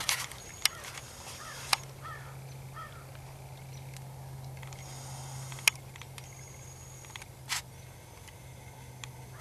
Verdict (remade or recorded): recorded